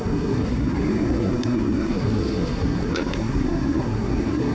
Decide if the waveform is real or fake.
fake